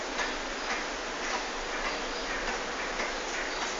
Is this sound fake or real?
real